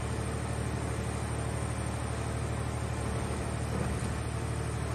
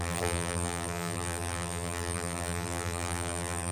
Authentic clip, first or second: first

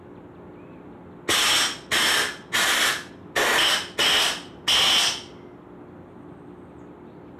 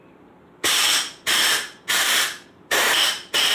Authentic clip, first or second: first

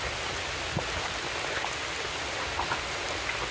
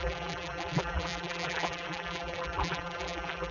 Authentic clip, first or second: first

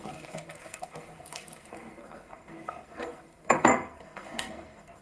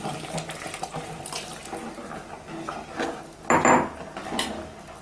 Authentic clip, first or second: second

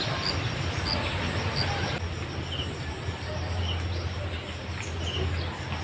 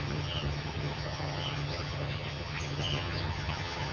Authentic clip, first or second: first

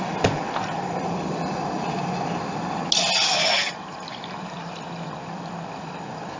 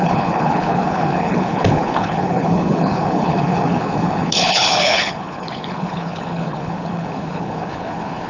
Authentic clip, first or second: first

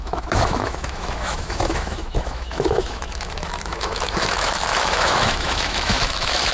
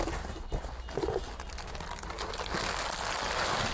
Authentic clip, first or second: second